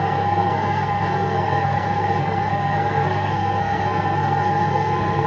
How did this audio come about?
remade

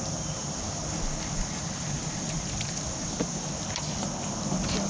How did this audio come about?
recorded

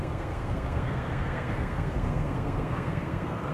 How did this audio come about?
remade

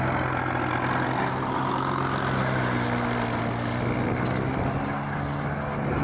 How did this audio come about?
recorded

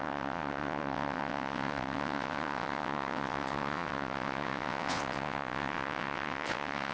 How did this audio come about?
remade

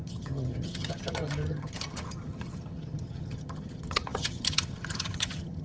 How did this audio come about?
remade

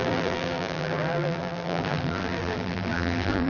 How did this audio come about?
remade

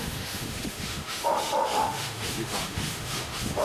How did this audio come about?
remade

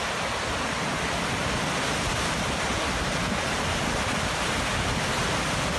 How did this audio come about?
recorded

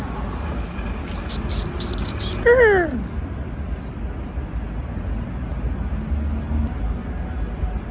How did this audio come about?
recorded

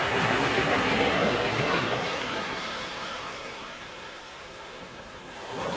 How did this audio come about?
remade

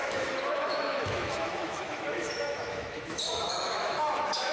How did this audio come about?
remade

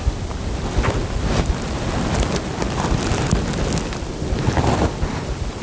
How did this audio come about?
recorded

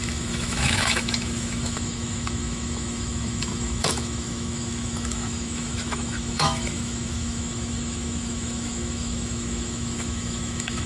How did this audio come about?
remade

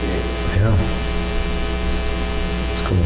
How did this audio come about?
recorded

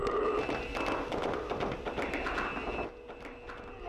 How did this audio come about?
recorded